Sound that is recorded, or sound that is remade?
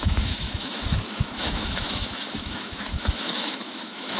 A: remade